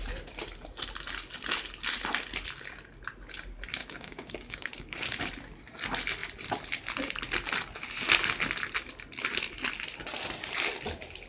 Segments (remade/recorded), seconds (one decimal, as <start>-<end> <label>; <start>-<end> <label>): 0.0-3.8 recorded; 3.8-5.2 remade; 5.2-11.3 recorded